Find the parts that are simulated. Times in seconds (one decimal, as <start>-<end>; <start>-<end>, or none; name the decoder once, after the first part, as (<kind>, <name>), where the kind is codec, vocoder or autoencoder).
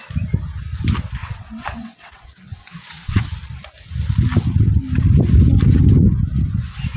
1.2-3.2 (vocoder, WaveNeXt)